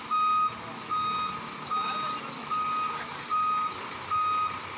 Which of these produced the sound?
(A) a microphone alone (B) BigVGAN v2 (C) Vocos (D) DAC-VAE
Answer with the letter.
A